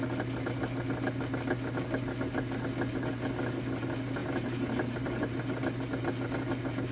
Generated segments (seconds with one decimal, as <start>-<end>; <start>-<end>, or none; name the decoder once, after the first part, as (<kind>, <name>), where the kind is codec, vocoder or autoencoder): none